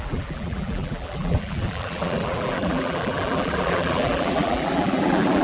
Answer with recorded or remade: remade